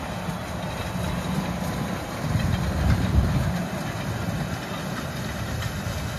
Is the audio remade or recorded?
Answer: recorded